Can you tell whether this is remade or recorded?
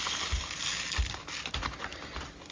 recorded